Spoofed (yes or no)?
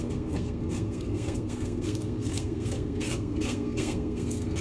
yes